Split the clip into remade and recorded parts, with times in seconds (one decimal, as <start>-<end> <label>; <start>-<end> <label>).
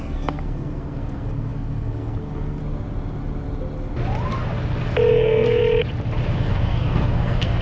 0.0-2.6 remade; 2.6-5.1 recorded; 5.1-5.6 remade; 5.6-6.4 recorded; 6.4-7.6 remade